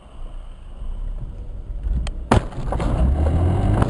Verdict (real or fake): real